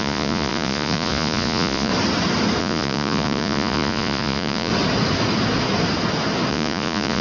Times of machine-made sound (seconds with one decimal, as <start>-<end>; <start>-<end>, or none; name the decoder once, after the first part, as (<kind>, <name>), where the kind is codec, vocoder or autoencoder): 0.0-1.9 (vocoder, Vocos); 2.6-4.7; 6.5-7.2